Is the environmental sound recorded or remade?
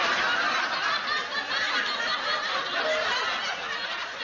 recorded